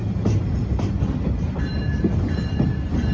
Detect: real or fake real